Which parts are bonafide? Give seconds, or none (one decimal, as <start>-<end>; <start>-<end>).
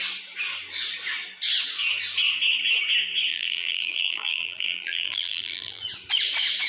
0.0-3.3; 5.8-6.7